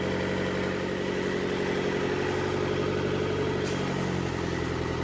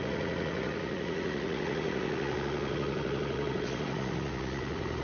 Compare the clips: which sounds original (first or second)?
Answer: first